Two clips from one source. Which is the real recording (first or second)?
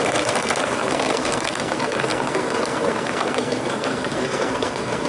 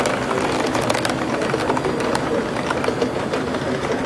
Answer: second